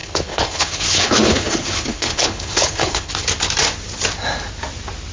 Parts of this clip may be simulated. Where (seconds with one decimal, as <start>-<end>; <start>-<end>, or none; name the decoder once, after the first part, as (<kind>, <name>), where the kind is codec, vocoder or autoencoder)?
0.0-3.1 (codec, HILCodec)